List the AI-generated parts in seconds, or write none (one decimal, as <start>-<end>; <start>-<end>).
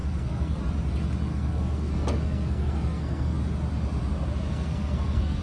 0.0-0.6; 1.3-3.4; 4.5-5.4